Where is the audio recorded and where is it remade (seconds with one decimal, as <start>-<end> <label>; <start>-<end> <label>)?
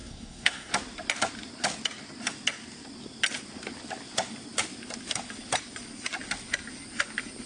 0.0-0.7 remade; 0.7-7.5 recorded